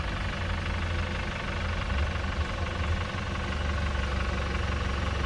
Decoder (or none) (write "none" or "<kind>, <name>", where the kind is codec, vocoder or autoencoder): none